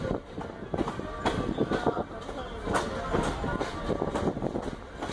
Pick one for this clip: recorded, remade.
recorded